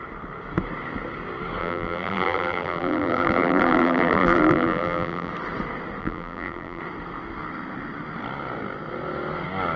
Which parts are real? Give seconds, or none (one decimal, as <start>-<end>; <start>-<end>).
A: 0.0-1.6; 5.3-6.0; 6.8-9.8

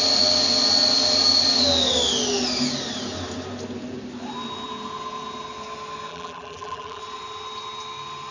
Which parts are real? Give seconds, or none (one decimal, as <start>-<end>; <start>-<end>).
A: 0.0-6.1; 7.0-8.3

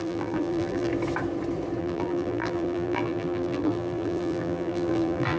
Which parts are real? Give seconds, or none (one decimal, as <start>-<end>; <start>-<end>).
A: 0.9-1.8